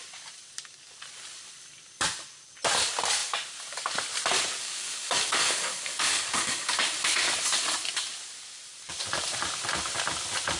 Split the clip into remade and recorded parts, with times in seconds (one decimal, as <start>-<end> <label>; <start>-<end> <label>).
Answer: 0.0-4.6 recorded; 4.6-6.7 remade; 6.7-10.6 recorded